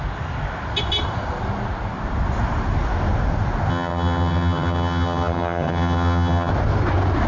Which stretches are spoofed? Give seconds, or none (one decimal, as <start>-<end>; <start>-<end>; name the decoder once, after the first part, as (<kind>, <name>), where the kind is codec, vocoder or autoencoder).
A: 3.7-6.5 (vocoder, HiFi-GAN)